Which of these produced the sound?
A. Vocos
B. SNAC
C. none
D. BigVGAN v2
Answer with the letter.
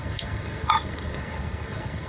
B